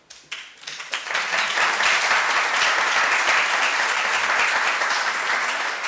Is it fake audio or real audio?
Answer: real